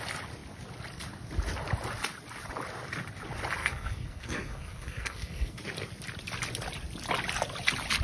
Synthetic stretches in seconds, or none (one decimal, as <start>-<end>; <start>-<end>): 3.6-5.6